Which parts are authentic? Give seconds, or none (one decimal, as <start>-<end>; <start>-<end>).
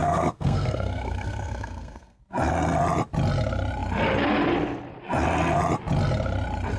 2.2-6.8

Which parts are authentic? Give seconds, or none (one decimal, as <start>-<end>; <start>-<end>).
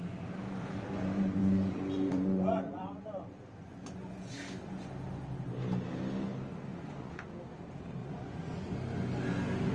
0.0-1.4; 4.3-6.7; 7.3-8.0; 8.7-9.7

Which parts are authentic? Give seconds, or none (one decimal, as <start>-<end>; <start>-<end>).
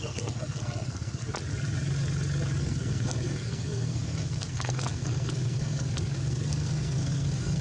1.2-2.6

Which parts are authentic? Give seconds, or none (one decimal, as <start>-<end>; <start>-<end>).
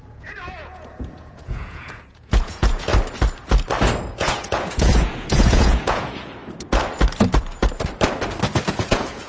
2.9-4.1; 6.4-8.7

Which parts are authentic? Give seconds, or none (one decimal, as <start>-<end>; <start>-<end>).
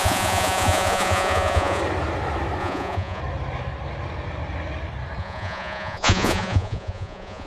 1.8-2.6; 3.2-5.2